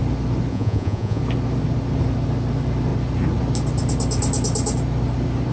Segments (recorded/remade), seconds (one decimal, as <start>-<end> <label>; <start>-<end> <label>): 0.0-0.5 recorded; 0.5-1.2 remade; 1.2-5.5 recorded